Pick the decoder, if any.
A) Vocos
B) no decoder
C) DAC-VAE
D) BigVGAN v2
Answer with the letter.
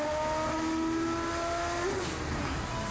B